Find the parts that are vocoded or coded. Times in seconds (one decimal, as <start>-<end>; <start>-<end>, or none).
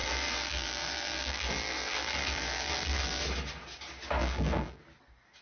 0.0-3.2; 4.2-4.8